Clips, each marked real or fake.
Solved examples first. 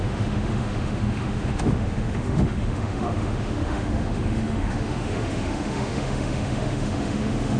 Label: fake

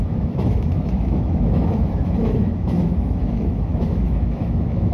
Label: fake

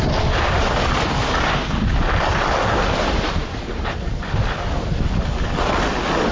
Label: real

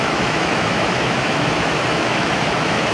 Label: fake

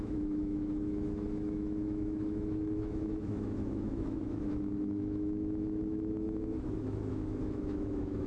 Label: fake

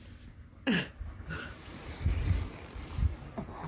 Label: real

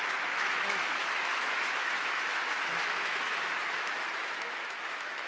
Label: fake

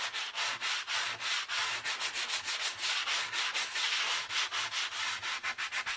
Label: real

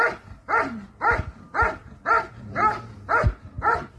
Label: real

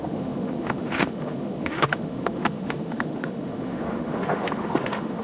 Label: fake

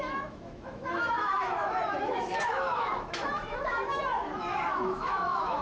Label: fake